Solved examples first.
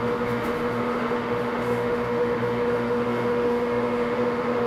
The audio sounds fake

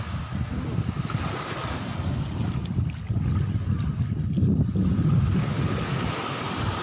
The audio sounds real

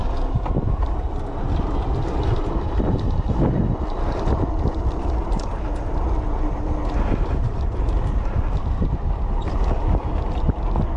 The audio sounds real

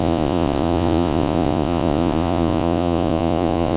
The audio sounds fake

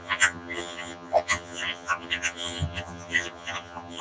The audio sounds fake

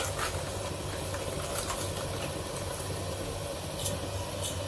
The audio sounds real